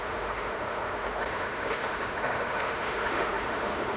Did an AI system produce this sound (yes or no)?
yes